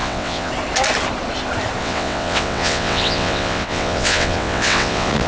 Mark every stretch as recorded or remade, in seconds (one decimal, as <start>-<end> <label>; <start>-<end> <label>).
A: 0.0-0.5 remade; 0.5-1.8 recorded; 1.8-5.3 remade